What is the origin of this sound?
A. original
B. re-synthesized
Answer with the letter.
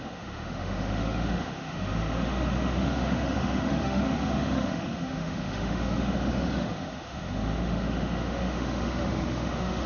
B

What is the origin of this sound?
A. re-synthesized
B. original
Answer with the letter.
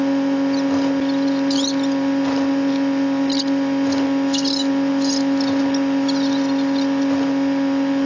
B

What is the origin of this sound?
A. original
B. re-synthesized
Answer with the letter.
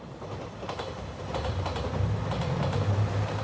A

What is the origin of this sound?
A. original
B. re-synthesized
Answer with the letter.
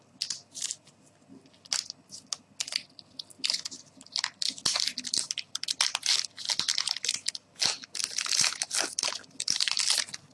A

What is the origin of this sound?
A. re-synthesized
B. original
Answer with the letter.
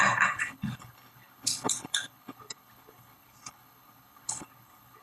A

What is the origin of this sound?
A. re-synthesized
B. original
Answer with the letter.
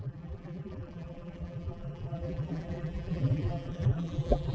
A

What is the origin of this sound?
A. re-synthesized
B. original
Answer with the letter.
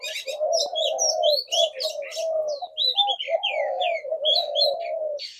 B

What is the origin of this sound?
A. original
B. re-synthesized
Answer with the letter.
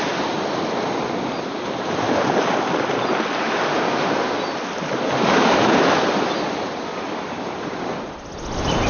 A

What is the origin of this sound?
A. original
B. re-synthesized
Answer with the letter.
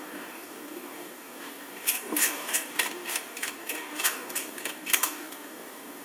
B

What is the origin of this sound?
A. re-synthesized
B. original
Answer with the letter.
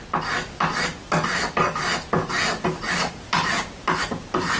B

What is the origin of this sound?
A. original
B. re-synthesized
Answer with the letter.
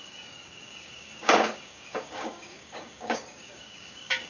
B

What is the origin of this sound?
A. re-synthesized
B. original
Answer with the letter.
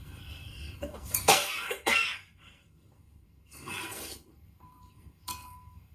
A